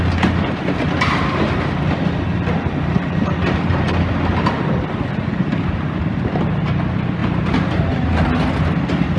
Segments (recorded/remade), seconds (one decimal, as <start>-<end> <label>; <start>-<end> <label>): 0.0-9.2 recorded